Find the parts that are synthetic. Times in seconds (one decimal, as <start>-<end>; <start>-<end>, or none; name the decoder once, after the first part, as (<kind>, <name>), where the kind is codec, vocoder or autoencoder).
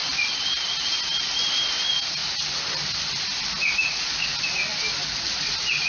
none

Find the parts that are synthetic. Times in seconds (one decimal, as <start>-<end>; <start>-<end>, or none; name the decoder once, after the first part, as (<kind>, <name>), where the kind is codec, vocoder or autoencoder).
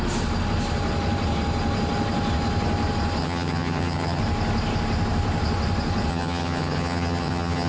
3.2-4.2 (vocoder, HiFi-GAN); 6.1-7.7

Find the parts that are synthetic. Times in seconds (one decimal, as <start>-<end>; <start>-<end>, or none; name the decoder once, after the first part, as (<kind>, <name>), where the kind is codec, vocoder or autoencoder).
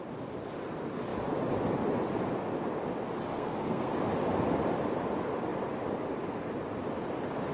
3.3-3.9 (codec, SNAC)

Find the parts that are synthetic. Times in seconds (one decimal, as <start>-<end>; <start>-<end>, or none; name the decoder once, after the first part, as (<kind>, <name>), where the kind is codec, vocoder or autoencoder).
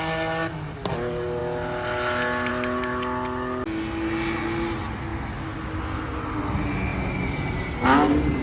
none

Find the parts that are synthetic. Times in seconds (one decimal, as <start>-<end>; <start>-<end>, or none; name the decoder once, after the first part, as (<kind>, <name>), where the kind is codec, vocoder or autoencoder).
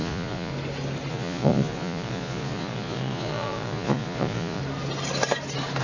0.0-0.5 (vocoder, Vocos); 1.1-4.6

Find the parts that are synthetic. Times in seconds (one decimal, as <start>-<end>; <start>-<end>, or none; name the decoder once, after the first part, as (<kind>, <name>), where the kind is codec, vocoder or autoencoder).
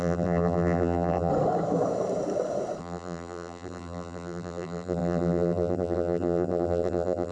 0.0-1.3 (vocoder, BigVGAN v2); 2.8-7.3